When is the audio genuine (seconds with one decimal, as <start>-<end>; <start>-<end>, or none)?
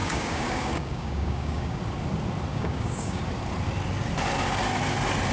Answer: 1.8-2.5; 3.2-5.3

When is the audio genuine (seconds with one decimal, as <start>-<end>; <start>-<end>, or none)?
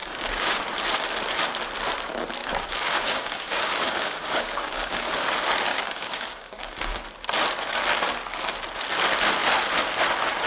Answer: 0.6-2.4; 5.1-5.7; 7.0-10.5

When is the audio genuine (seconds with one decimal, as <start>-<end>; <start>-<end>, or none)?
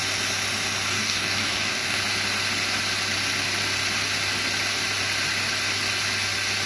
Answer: 0.0-0.9; 2.0-6.7